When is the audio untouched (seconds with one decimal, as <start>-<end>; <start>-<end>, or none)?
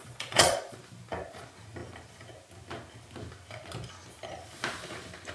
0.8-5.3